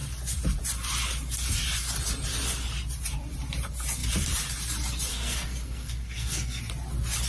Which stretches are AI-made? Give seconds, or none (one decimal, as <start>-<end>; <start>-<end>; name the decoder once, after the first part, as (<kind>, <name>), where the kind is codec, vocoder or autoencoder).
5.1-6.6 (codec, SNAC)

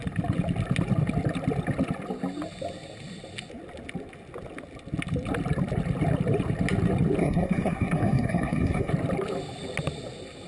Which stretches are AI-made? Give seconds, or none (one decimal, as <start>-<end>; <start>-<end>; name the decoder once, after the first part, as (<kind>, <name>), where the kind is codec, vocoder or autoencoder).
7.2-8.9 (codec, SNAC)

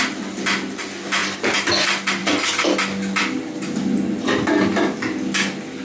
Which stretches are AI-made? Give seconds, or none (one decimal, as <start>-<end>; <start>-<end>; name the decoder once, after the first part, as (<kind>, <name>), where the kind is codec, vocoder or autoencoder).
none

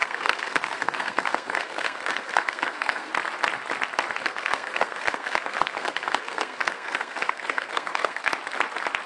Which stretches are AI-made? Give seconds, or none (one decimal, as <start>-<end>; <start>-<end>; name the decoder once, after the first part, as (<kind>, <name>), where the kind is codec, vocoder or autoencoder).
0.0-3.1 (codec, SNAC); 4.2-8.3

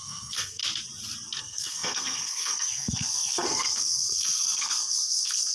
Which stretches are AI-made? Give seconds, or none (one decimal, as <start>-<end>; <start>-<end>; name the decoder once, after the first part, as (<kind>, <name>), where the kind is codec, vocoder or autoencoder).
0.0-0.6 (codec, SNAC); 1.4-5.5

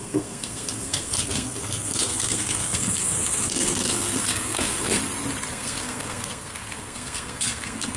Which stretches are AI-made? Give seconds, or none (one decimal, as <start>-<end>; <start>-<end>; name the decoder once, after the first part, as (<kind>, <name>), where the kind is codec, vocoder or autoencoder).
0.0-5.0 (codec, SNAC); 5.5-8.0